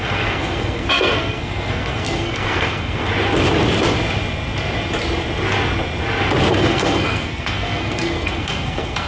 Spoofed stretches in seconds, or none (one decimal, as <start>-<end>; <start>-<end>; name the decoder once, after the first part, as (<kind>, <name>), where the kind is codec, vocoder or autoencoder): 0.0-3.1 (codec, SNAC); 6.5-9.1